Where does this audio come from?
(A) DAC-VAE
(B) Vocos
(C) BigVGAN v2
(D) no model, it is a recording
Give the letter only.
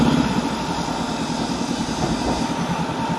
D